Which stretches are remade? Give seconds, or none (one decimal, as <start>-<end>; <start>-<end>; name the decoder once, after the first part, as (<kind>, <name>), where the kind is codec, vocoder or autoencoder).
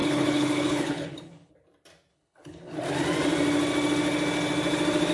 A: 0.0-1.5 (codec, HILCodec); 2.1-2.8